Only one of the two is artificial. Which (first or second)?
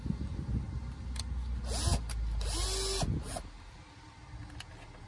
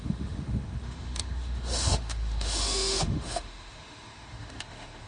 second